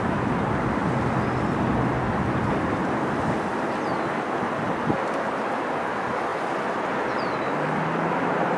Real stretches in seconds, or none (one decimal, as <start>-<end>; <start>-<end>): 0.8-2.8; 3.5-4.9

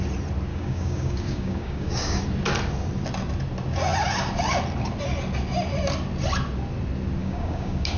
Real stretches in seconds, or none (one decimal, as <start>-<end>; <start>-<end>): 0.0-0.5; 2.2-7.2